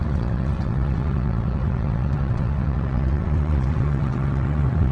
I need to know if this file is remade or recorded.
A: remade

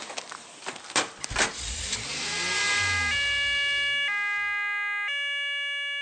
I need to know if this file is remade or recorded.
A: recorded